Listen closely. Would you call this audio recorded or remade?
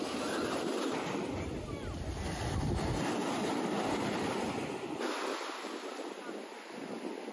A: recorded